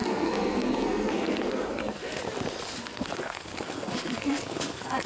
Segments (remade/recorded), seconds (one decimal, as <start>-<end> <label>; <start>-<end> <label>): 0.0-2.2 remade; 2.2-2.8 recorded; 2.8-5.1 remade